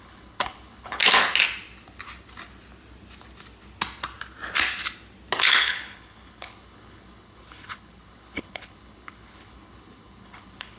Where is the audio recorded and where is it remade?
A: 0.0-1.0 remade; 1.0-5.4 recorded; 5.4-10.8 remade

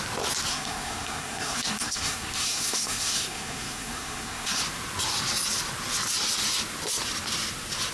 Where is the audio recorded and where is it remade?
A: 0.0-0.5 recorded; 0.5-4.6 remade; 4.6-7.9 recorded